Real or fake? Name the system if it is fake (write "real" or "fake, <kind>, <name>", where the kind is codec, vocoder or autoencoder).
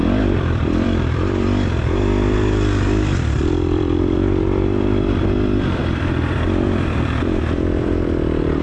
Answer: fake, vocoder, BigVGAN v2